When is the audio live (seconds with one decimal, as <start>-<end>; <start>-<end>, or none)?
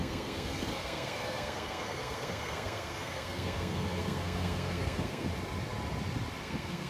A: 5.3-6.4